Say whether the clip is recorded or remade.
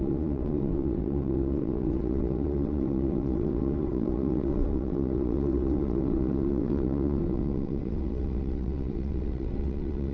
remade